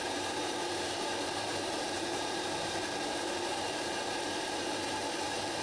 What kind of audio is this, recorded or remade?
remade